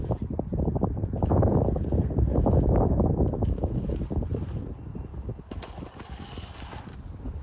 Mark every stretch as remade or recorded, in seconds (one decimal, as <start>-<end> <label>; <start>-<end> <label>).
0.0-1.0 recorded; 1.0-1.7 remade; 1.7-2.3 recorded; 2.3-3.9 remade; 3.9-5.1 recorded; 5.1-5.7 remade; 5.7-7.4 recorded

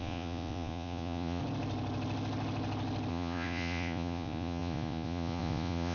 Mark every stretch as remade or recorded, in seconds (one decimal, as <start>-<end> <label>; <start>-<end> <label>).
0.0-1.4 remade; 1.4-3.1 recorded; 3.1-5.9 remade

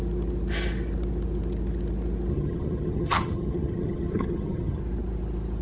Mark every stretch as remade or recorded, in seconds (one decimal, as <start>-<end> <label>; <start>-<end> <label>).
0.0-2.3 recorded; 2.3-4.8 remade; 4.8-5.6 recorded

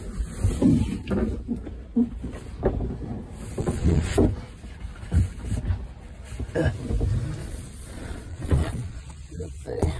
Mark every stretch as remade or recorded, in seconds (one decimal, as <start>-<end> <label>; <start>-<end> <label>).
0.0-3.6 recorded; 3.6-4.2 remade; 4.2-7.4 recorded; 7.4-10.0 remade

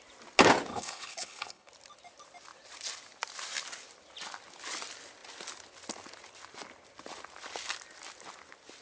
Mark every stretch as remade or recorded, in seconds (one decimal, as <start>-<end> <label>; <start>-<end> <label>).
0.0-0.7 recorded; 0.7-1.7 remade; 1.7-8.8 recorded

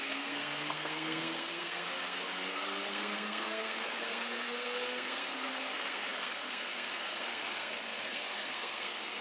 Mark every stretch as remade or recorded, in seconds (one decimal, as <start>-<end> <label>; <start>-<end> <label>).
0.0-9.2 remade

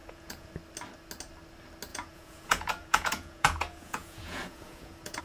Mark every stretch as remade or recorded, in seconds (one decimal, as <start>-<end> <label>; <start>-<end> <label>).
0.0-0.5 remade; 0.5-1.9 recorded; 1.9-5.2 remade